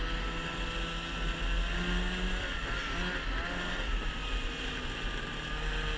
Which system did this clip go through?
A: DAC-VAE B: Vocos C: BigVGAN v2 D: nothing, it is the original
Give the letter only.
D